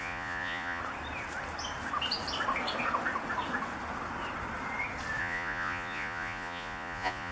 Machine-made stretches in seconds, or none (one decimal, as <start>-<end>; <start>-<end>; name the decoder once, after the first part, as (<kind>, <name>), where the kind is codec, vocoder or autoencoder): 0.0-0.8 (vocoder, Vocos); 5.2-7.3